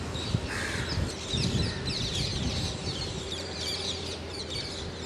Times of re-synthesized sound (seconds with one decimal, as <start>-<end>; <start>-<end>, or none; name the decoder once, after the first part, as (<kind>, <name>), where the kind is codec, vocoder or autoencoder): 2.3-4.4 (vocoder, BigVGAN v2)